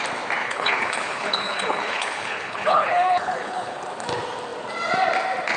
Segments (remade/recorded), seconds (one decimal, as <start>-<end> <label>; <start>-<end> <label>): 0.0-0.4 recorded; 0.4-3.8 remade; 3.8-5.6 recorded